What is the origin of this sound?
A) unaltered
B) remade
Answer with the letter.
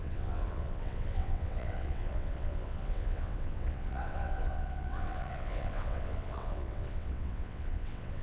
B